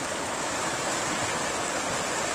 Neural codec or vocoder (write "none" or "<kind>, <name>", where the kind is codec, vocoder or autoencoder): none